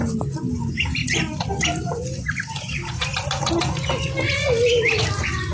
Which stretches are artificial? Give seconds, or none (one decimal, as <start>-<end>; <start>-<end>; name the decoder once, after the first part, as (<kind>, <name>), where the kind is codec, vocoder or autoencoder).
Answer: none